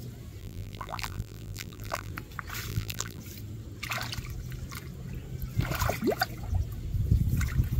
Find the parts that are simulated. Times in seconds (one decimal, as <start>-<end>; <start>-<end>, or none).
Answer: 0.4-2.1; 2.7-3.2